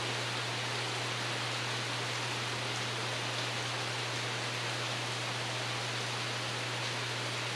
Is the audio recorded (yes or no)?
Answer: yes